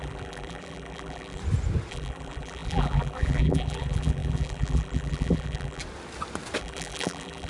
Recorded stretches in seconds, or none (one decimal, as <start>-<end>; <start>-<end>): 1.4-1.9; 5.8-6.6